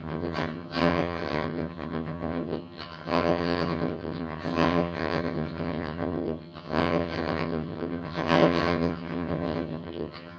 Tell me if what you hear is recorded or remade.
remade